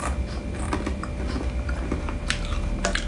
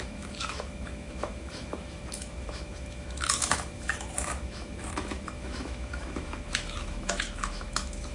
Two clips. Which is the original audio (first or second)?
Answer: first